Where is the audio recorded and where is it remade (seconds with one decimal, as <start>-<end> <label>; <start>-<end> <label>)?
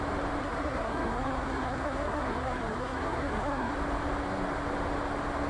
0.0-0.4 recorded; 0.4-3.7 remade; 3.7-5.5 recorded